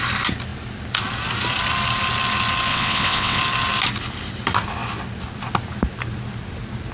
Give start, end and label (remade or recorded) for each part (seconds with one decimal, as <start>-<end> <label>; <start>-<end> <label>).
0.0-2.7 recorded; 2.7-3.4 remade; 3.4-6.9 recorded